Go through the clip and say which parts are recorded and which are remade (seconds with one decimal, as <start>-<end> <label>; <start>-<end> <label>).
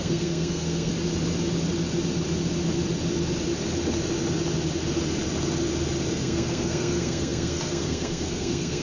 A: 0.0-0.9 remade; 0.9-6.1 recorded; 6.1-8.8 remade